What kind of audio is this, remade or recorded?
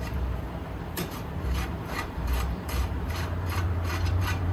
remade